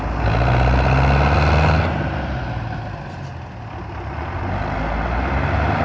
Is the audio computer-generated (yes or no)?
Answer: no